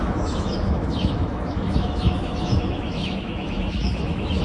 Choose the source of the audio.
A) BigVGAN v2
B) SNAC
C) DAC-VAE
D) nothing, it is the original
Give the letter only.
C